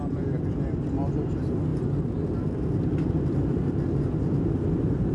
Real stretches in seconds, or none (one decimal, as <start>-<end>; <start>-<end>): 0.0-5.1

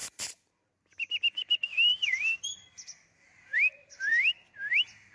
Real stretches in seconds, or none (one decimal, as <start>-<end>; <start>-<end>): 0.7-1.7; 4.6-5.1

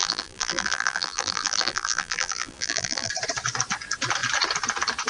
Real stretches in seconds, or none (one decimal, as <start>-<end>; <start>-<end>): 3.1-5.1

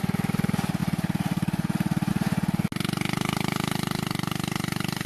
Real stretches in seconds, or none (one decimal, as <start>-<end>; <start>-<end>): 0.0-0.8; 2.1-5.1

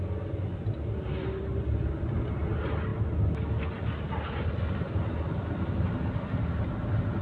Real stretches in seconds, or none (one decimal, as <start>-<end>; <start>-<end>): 0.0-7.2

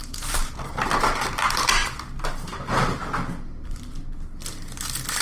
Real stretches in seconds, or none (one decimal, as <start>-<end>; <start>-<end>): 0.7-5.2

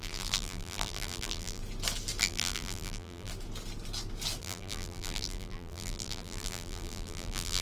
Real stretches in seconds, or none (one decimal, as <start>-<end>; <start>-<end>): 1.6-2.2; 3.3-4.4